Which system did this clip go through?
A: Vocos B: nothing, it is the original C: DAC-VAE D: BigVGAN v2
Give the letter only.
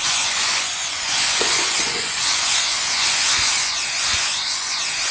A